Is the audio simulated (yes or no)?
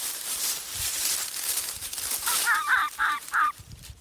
yes